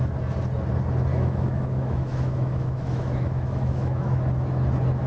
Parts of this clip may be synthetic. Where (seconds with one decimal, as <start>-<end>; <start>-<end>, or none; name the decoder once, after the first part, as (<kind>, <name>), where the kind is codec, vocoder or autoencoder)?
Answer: 1.1-4.2 (autoencoder, DAC-VAE)